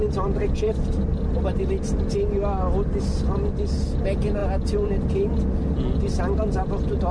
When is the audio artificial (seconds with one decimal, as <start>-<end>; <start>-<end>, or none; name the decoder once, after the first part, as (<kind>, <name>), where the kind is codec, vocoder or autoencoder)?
none